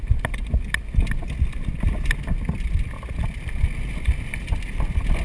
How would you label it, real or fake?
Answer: real